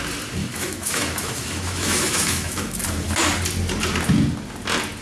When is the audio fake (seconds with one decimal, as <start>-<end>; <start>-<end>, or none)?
0.4-2.8